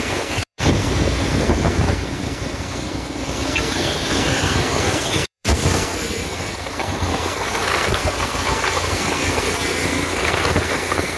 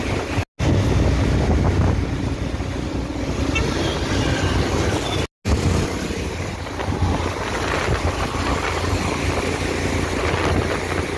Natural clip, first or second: second